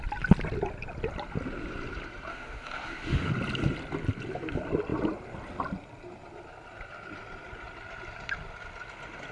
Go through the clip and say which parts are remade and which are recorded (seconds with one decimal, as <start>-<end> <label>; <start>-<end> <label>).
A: 0.0-2.3 recorded; 2.3-3.3 remade; 3.3-9.3 recorded